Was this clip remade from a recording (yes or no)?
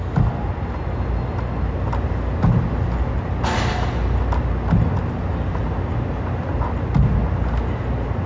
no